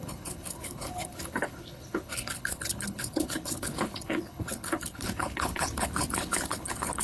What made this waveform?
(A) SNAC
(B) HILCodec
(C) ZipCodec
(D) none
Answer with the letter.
B